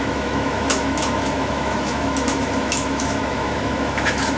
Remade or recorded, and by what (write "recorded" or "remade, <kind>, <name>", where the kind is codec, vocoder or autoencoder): remade, autoencoder, DAC-VAE